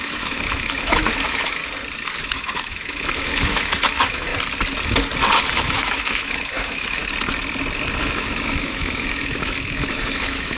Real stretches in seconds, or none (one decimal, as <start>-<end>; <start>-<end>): 1.6-2.2; 4.3-5.5; 7.0-8.0